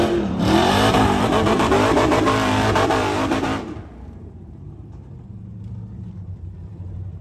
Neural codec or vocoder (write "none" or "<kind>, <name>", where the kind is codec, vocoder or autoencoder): vocoder, BigVGAN v2